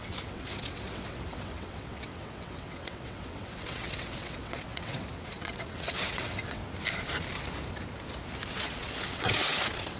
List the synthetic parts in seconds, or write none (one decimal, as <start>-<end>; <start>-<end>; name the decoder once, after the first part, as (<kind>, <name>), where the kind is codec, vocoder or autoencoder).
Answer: 0.0-6.6 (vocoder, WaveNeXt); 8.5-10.0